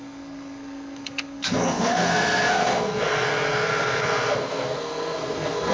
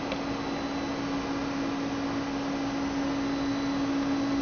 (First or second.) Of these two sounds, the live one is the second